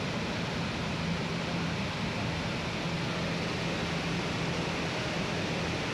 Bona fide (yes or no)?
yes